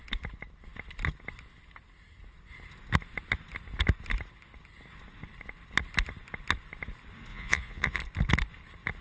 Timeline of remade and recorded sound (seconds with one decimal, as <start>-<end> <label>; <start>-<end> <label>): 0.0-7.3 recorded; 7.3-8.0 remade; 8.0-9.0 recorded